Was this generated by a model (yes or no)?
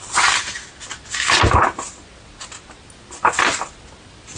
no